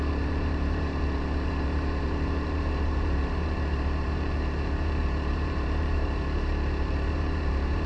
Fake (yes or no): yes